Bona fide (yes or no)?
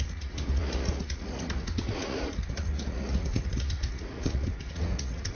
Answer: no